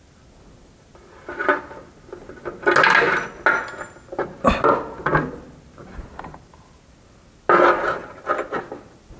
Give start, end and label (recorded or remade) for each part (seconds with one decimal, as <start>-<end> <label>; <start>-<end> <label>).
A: 0.0-9.2 recorded